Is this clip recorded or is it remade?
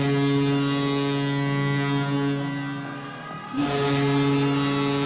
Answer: recorded